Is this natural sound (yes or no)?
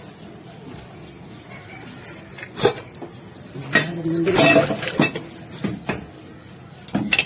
yes